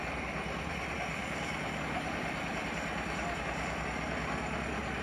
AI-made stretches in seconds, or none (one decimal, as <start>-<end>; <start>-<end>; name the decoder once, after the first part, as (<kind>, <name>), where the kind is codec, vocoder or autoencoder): none